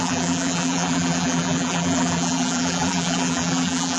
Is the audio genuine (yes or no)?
no